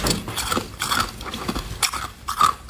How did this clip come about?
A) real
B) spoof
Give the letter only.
A